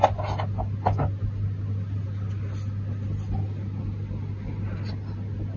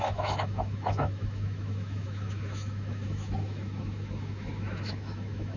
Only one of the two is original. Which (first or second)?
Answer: first